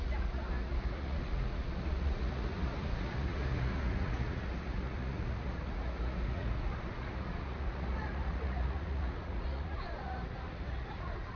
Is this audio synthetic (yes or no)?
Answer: yes